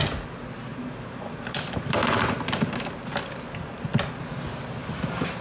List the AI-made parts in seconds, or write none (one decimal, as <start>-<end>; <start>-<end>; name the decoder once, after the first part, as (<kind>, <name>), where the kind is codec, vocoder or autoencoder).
0.7-2.7 (vocoder, BigVGAN v2)